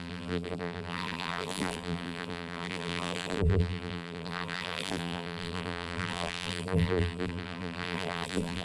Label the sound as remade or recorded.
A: remade